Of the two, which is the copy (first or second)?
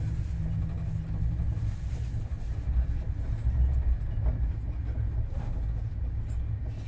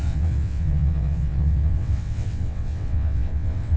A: second